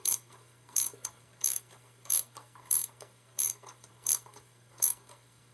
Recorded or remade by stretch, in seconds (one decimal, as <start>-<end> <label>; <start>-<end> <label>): 0.0-5.5 remade